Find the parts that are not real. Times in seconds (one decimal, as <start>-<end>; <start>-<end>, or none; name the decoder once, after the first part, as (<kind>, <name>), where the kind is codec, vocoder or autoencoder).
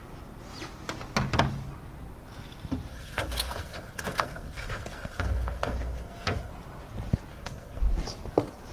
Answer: 2.9-6.5 (codec, SNAC); 7.3-7.8